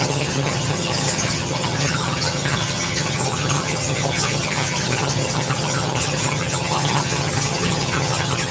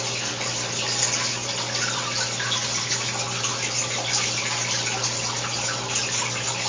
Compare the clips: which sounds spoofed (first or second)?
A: first